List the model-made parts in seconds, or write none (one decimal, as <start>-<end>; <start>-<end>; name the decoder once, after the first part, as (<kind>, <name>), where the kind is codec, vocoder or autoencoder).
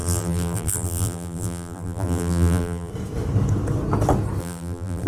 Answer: 0.0-2.9 (vocoder, BigVGAN v2); 4.4-5.1